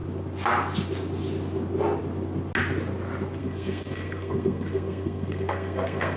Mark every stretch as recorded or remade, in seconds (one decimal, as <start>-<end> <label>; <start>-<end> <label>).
0.0-3.4 recorded; 3.4-6.2 remade